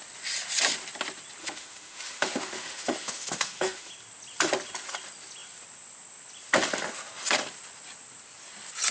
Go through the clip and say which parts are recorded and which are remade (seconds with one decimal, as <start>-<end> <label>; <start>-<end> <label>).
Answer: 0.0-1.4 recorded; 1.4-3.9 remade; 3.9-8.9 recorded